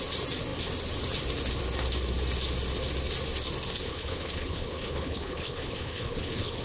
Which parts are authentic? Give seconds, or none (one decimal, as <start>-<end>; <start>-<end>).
0.0-3.9